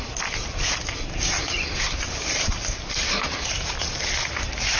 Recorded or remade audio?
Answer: recorded